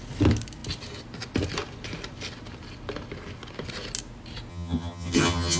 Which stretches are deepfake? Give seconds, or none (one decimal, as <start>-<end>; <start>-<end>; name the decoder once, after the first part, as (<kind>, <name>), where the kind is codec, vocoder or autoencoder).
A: 4.5-5.6 (vocoder, HiFi-GAN)